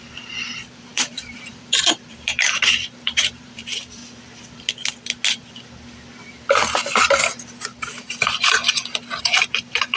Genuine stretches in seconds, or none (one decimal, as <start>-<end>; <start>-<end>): 4.0-9.2